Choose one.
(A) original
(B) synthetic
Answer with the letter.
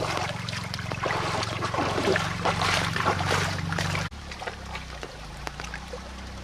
B